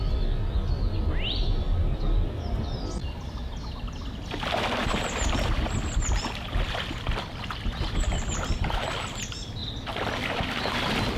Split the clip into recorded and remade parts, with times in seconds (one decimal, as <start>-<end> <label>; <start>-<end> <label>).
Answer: 0.0-3.0 recorded; 3.0-4.2 remade; 4.2-4.8 recorded; 4.8-8.7 remade; 8.7-11.2 recorded